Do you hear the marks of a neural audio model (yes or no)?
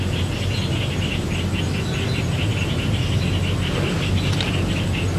no